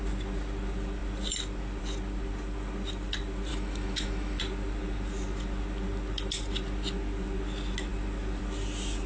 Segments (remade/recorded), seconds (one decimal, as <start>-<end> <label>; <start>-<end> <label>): 0.0-3.5 recorded; 3.5-4.4 remade; 4.4-9.1 recorded